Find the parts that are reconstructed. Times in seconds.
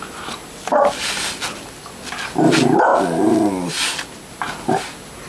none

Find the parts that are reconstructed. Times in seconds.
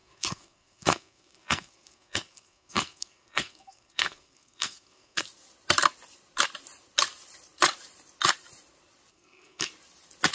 0.0-5.2 (codec, SNAC); 9.1-9.7